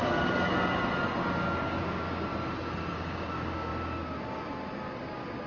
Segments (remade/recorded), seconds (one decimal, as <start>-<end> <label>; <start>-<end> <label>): 0.0-1.6 recorded; 1.6-2.3 remade; 2.3-2.9 recorded; 2.9-3.7 remade; 3.7-5.5 recorded

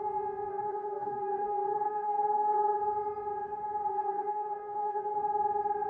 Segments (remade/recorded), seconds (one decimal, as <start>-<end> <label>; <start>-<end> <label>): 0.0-0.5 recorded; 0.5-2.8 remade; 2.8-3.9 recorded; 3.9-5.2 remade; 5.2-5.9 recorded